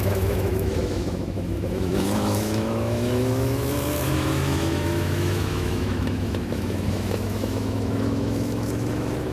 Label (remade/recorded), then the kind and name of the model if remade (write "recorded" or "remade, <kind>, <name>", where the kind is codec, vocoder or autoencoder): remade, autoencoder, DAC-VAE